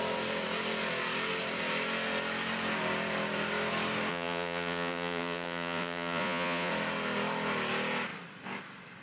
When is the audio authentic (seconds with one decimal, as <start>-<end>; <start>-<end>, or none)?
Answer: 0.0-4.1; 6.7-9.0